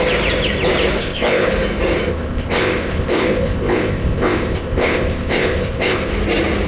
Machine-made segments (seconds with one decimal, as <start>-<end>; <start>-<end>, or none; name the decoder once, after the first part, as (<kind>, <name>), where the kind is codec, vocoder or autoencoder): 1.0-1.5 (codec, ZipCodec); 2.1-6.1